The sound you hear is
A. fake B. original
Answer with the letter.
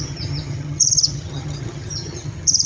A